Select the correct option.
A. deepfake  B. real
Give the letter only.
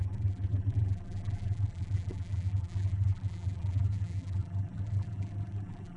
A